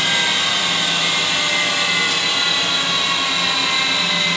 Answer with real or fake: real